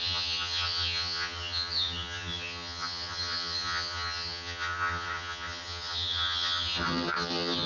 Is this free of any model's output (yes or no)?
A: no